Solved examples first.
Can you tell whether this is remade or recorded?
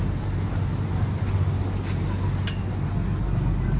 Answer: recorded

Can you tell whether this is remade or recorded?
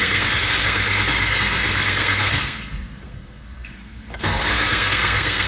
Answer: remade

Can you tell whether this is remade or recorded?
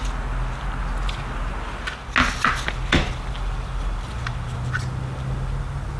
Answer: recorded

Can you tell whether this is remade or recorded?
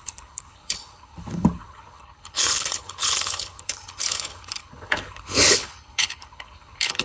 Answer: remade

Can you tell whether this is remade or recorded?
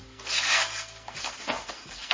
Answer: remade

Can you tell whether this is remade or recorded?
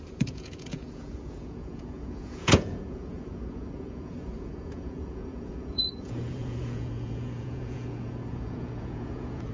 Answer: remade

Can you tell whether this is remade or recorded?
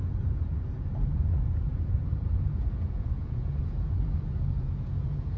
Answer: remade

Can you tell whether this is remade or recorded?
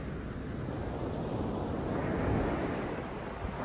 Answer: recorded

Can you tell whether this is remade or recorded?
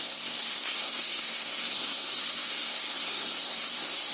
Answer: remade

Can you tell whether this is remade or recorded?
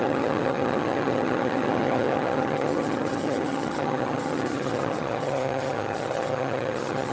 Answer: remade